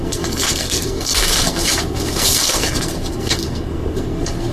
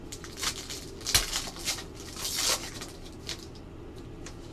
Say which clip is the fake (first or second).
first